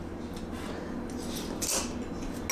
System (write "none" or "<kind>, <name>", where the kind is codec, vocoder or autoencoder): none